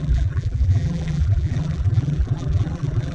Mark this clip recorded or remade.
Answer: remade